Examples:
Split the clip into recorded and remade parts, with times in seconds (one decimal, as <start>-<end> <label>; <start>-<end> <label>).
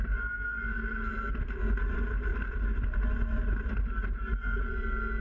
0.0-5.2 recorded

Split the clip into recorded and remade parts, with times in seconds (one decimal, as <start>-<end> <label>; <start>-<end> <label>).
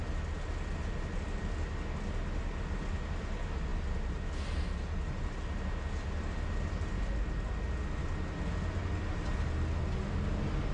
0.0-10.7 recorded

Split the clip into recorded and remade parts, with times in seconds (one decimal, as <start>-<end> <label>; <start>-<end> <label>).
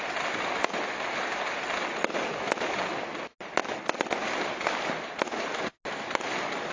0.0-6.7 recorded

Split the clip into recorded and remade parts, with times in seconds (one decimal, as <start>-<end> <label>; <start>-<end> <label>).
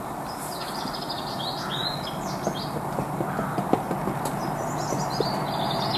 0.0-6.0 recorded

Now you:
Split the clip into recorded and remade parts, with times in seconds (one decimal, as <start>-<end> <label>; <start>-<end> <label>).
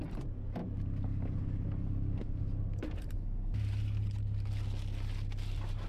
0.0-5.9 recorded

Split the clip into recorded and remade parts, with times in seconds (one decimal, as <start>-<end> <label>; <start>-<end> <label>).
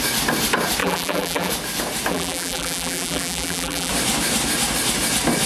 0.0-0.8 recorded; 0.8-1.5 remade; 1.5-2.1 recorded; 2.1-3.9 remade; 3.9-5.5 recorded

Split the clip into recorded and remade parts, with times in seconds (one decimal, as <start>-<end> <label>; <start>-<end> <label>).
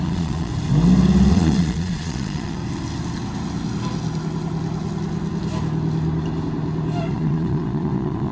0.0-0.5 remade; 0.5-1.3 recorded; 1.3-2.6 remade; 2.6-7.1 recorded; 7.1-8.3 remade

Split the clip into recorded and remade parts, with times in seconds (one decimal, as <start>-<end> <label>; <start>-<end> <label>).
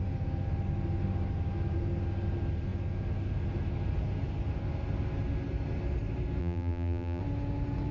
0.0-6.4 recorded; 6.4-7.2 remade; 7.2-7.9 recorded